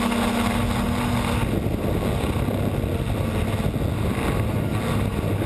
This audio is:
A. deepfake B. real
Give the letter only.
B